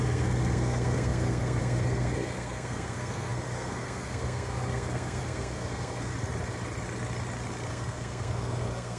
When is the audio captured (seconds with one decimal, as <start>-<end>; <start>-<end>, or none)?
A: 6.1-7.7